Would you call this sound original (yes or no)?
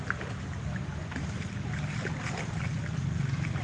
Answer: yes